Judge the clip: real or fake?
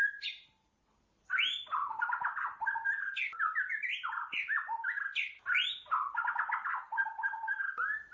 real